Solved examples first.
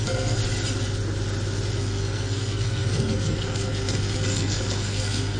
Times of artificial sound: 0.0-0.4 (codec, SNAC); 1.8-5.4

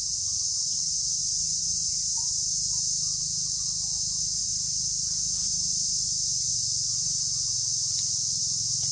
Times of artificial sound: 1.2-2.7 (vocoder, BigVGAN v2); 4.4-6.5

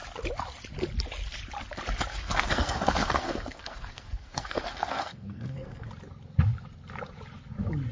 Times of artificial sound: 2.1-5.9 (codec, SNAC)

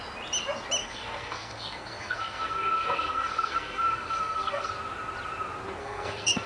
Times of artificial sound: 0.8-4.7 (codec, SNAC); 5.8-6.5

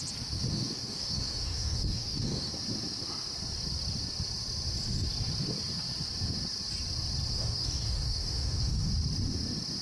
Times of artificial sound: 0.5-2.5 (codec, DAC); 7.3-8.9